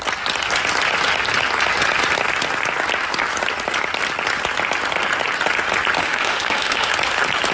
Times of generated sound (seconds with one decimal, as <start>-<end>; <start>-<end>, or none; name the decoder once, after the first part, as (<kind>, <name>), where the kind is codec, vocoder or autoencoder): 6.0-6.9 (autoencoder, DAC-VAE)